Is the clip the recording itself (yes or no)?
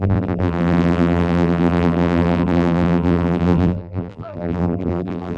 no